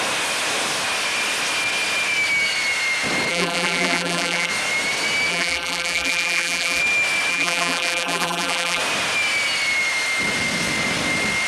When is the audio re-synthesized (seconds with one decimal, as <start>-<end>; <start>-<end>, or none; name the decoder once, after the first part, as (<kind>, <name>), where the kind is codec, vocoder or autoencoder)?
3.3-4.5 (vocoder, BigVGAN v2); 5.3-6.8; 7.3-8.8